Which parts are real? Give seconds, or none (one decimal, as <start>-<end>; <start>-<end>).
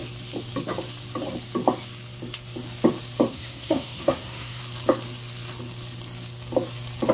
0.0-3.3; 4.6-7.1